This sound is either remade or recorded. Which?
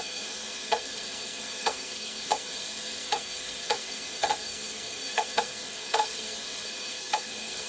remade